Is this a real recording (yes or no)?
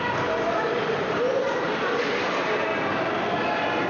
yes